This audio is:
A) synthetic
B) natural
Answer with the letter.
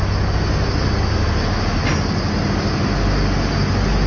B